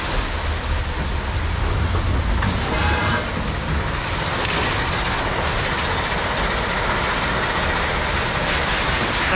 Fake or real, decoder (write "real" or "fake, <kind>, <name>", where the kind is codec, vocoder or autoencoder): real